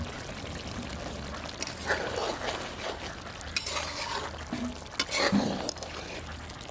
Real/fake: real